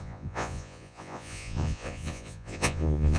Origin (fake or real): fake